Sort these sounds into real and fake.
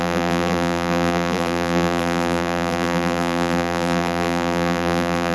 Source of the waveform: fake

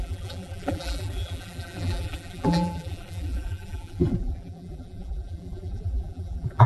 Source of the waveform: fake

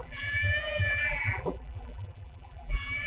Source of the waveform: fake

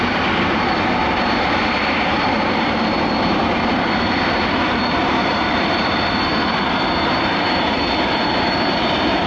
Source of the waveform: fake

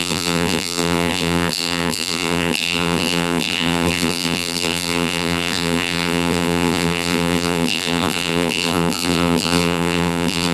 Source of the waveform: fake